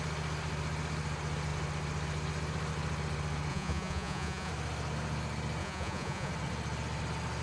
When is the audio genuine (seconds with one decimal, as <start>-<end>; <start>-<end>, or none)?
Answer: 0.0-3.5; 4.5-5.6; 6.3-7.4

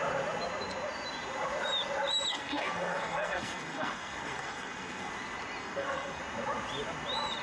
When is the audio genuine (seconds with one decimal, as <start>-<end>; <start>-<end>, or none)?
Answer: 0.0-2.3; 5.1-5.6; 6.2-7.4